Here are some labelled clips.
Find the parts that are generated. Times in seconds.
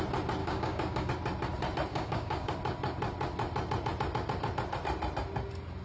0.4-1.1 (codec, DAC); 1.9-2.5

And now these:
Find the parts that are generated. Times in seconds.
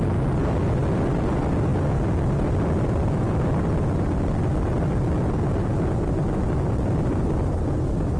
none